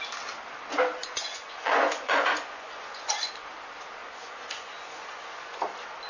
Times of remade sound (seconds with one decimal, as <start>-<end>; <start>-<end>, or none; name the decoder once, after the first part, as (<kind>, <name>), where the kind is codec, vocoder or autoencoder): 1.0-3.3 (vocoder, Vocos); 4.0-5.6